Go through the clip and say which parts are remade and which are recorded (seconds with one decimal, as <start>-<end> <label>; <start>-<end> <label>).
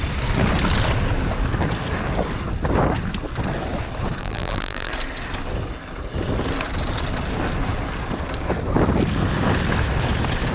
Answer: 0.0-4.2 recorded; 4.2-4.9 remade; 4.9-10.5 recorded